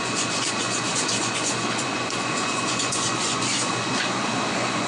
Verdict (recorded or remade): remade